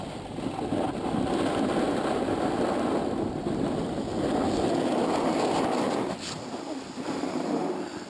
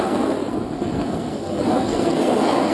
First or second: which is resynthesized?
second